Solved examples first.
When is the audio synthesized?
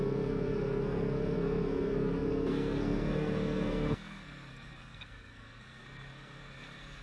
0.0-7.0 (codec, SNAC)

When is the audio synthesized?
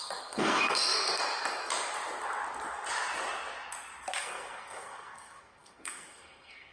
0.0-1.2 (codec, SNAC); 4.2-6.7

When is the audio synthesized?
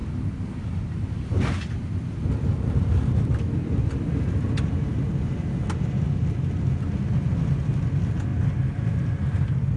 none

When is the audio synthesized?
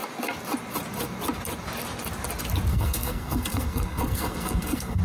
2.7-5.0 (codec, SNAC)